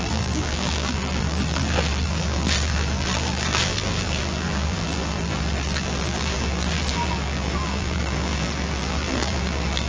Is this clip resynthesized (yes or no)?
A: yes